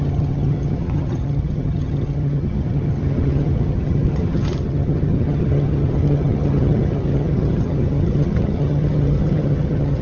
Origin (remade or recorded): remade